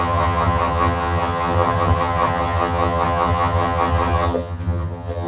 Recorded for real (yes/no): no